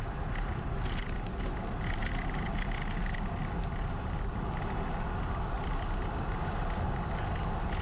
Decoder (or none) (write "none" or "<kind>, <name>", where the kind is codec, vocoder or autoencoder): none